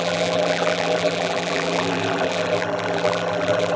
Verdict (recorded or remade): remade